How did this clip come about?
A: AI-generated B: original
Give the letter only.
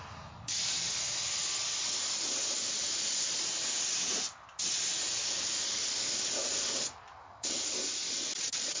B